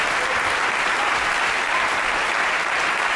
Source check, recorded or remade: recorded